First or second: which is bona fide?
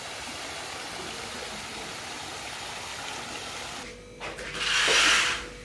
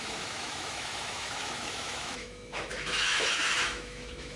first